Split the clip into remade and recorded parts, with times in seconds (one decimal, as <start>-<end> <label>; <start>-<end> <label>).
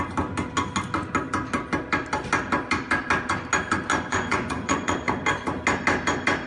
0.0-3.9 recorded; 3.9-5.1 remade; 5.1-6.5 recorded